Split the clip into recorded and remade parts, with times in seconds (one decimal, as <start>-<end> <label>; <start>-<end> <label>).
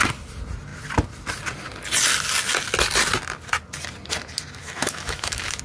0.0-4.6 recorded; 4.6-5.6 remade